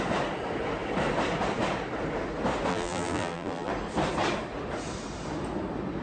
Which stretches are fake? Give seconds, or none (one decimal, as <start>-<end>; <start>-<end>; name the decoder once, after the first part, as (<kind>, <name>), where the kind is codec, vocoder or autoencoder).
2.7-3.7 (vocoder, BigVGAN v2)